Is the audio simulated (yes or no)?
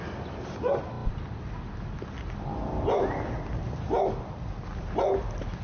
no